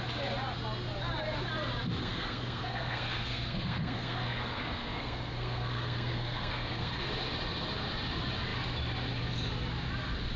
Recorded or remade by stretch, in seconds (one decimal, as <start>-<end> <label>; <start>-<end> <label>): 0.0-2.0 recorded; 2.0-7.1 remade; 7.1-10.4 recorded